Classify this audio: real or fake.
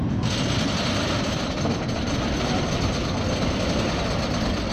real